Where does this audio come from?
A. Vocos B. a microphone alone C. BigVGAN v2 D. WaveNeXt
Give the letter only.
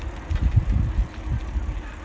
B